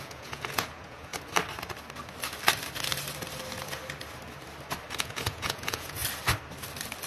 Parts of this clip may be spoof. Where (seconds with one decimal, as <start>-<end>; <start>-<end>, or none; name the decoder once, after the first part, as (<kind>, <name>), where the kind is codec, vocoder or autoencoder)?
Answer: 0.0-1.1 (vocoder, Vocos); 5.0-6.0